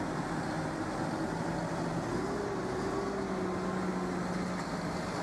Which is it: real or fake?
real